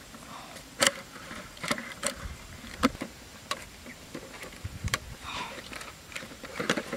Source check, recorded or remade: remade